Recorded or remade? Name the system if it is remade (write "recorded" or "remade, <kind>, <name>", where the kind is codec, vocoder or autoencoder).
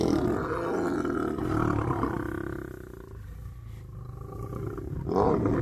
recorded